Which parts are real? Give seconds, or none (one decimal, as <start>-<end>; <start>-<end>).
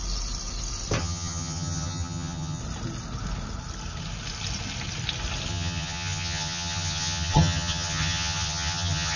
0.0-1.0; 2.6-5.5